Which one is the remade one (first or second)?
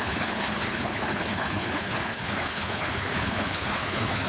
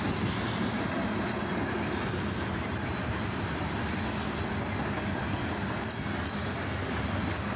first